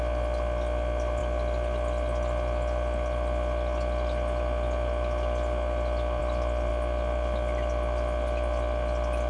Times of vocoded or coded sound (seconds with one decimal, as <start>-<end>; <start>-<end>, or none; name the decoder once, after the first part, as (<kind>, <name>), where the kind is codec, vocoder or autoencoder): none